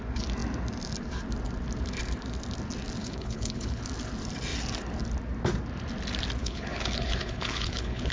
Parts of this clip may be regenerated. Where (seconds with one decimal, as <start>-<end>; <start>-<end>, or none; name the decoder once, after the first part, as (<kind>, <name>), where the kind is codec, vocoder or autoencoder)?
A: 3.0-3.8 (codec, HILCodec); 6.4-8.1